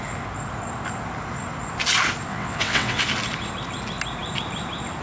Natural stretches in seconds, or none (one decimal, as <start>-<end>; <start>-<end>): 0.0-2.3; 3.0-5.0